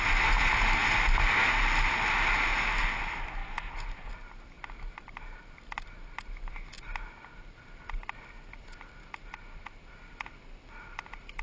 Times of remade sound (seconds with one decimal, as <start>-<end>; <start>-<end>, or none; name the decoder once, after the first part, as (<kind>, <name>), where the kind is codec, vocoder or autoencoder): none